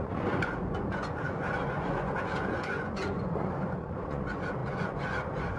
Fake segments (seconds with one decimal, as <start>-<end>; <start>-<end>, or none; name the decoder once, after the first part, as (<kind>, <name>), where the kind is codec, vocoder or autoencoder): 0.0-5.6 (vocoder, Vocos)